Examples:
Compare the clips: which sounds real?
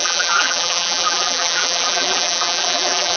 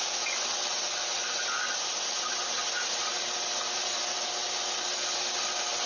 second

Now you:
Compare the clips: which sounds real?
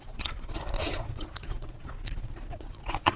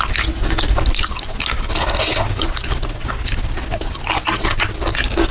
second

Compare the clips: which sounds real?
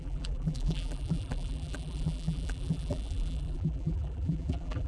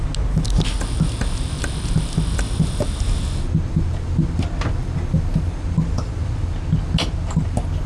second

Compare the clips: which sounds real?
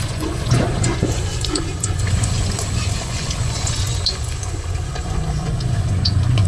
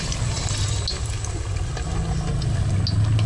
second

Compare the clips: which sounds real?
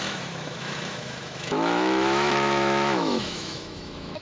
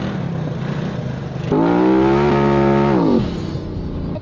second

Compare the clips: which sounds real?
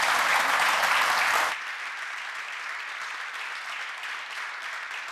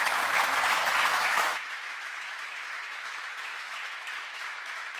first